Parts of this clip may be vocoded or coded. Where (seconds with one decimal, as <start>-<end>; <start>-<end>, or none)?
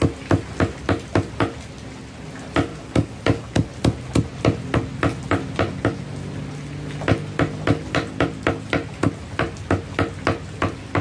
2.7-3.7